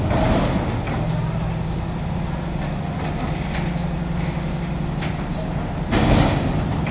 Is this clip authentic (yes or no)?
yes